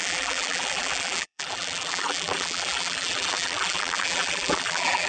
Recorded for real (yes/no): no